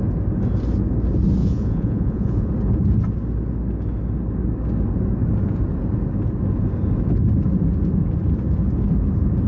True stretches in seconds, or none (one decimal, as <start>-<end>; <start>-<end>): 0.0-1.4; 2.5-9.5